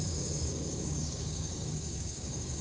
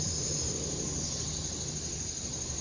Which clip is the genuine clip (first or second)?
second